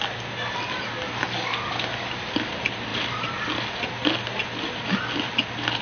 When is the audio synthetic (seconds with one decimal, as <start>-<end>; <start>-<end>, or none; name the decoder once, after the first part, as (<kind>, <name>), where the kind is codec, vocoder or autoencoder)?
none